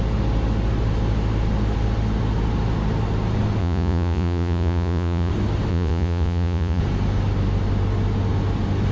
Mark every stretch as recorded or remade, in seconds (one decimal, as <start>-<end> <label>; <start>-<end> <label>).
0.0-3.6 recorded; 3.6-5.3 remade; 5.3-5.7 recorded; 5.7-6.8 remade; 6.8-8.9 recorded